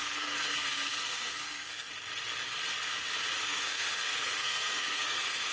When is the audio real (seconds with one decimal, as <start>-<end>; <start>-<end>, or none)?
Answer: 1.9-3.4